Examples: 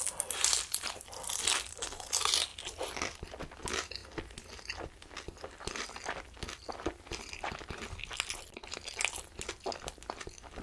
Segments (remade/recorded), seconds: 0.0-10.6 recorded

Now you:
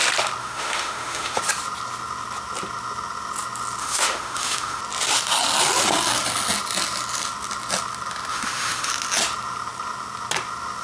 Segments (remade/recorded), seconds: 0.0-0.4 recorded; 0.4-1.4 remade; 1.4-3.8 recorded; 3.8-4.8 remade; 4.8-8.3 recorded; 8.3-8.9 remade; 8.9-10.8 recorded

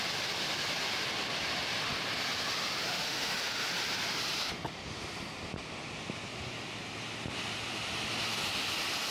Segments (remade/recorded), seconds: 0.0-2.9 recorded; 2.9-3.7 remade; 3.7-9.1 recorded

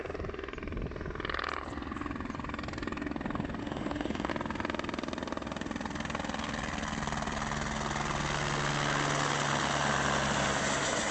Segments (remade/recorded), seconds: 0.0-3.6 recorded; 3.6-4.3 remade; 4.3-11.1 recorded

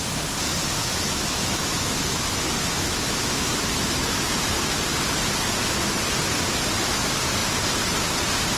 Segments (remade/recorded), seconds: 0.0-0.8 recorded; 0.8-4.8 remade; 4.8-8.6 recorded

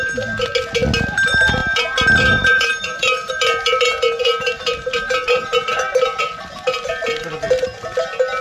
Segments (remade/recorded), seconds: 0.0-8.4 recorded

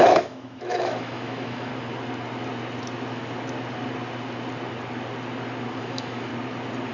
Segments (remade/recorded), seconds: 0.0-1.7 remade; 1.7-5.8 recorded; 5.8-6.3 remade; 6.3-6.9 recorded

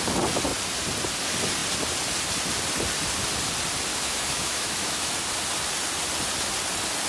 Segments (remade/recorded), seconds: 0.0-3.9 recorded; 3.9-5.1 remade; 5.1-7.1 recorded